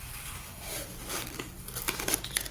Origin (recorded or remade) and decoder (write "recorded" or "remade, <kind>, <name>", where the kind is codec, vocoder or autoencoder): recorded